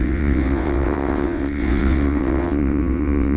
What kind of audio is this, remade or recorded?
remade